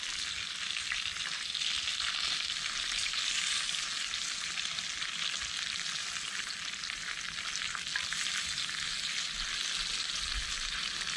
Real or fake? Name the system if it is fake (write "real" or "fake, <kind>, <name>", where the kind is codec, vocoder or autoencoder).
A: real